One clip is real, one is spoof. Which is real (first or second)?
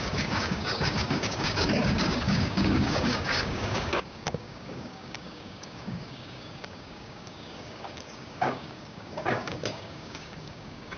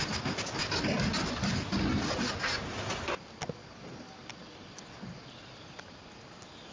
second